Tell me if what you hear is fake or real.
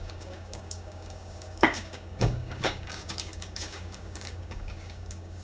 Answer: fake